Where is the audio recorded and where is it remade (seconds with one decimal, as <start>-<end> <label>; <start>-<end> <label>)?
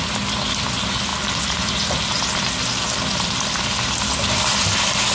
0.0-5.1 recorded